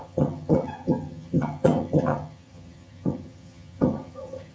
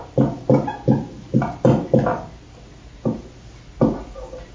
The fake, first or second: first